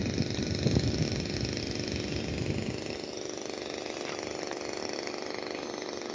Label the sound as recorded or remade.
recorded